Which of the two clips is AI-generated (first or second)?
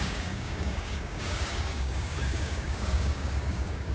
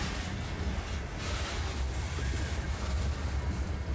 first